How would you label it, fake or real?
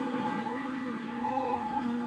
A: fake